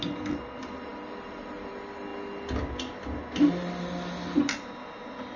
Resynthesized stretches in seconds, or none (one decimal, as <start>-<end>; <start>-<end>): none

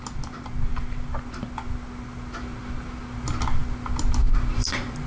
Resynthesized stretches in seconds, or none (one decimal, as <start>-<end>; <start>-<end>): none

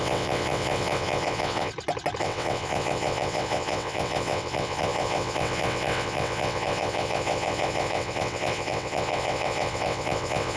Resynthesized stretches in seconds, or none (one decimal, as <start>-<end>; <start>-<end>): 0.0-1.7; 2.2-10.6

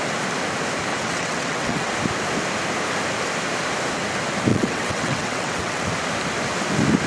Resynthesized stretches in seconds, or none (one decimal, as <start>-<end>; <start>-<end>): 0.9-1.9; 4.5-5.8